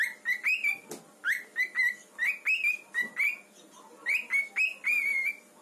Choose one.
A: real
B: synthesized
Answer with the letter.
A